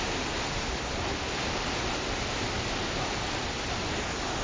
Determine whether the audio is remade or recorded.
recorded